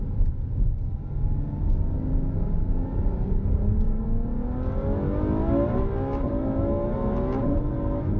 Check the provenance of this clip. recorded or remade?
recorded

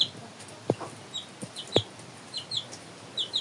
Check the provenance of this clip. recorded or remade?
recorded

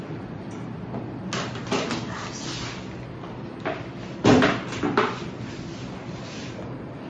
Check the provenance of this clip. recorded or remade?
recorded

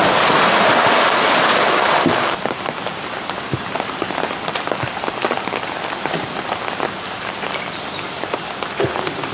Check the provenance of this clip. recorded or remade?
recorded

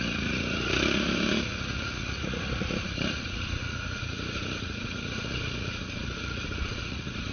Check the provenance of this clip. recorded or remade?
remade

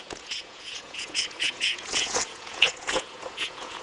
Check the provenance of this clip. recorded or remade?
remade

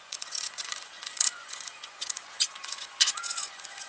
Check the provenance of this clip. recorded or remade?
remade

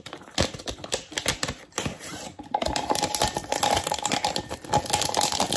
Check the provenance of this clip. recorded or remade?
recorded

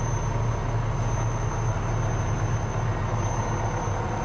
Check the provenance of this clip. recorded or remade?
recorded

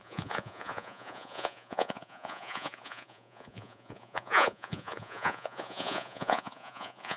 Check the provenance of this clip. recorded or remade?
remade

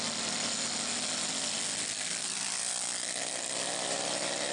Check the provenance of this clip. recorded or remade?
recorded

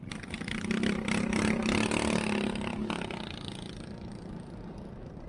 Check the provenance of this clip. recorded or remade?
recorded